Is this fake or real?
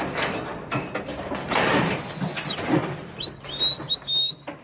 real